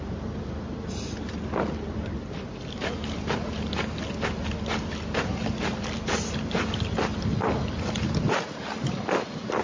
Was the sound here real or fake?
real